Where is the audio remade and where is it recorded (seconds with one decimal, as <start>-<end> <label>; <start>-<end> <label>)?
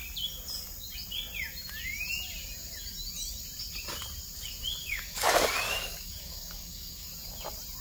0.0-4.8 recorded; 4.8-7.1 remade; 7.1-7.8 recorded